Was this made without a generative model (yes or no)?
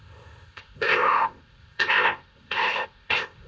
no